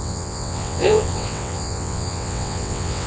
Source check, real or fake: fake